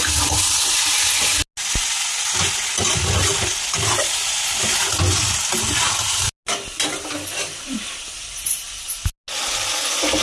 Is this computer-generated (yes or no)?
no